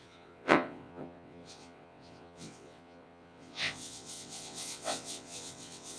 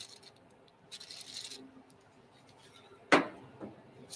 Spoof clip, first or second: first